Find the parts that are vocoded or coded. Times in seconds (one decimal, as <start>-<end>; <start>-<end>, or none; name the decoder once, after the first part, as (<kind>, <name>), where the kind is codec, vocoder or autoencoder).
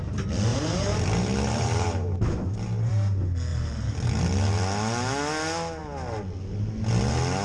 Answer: 0.5-2.9 (vocoder, BigVGAN v2); 3.5-4.2